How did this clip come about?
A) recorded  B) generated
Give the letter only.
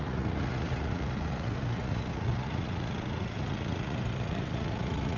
B